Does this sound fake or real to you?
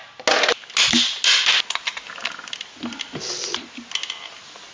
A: real